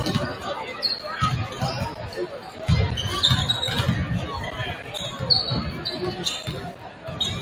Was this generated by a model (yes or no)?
no